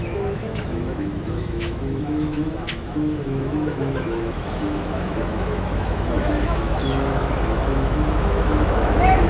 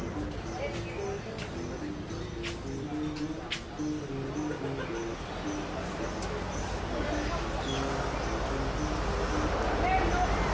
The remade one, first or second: first